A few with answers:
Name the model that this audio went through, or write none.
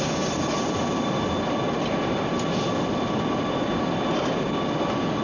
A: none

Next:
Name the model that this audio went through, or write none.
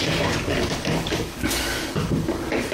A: codec, DAC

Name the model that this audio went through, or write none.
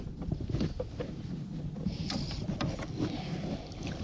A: none